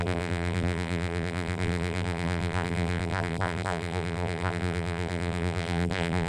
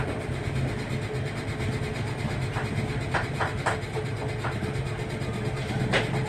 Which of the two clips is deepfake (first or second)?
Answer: first